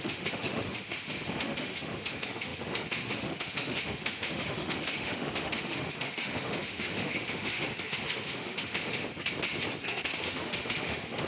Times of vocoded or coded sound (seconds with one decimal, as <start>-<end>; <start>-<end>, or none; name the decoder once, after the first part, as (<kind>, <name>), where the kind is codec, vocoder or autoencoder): 0.0-9.0 (autoencoder, DAC-VAE); 9.8-11.3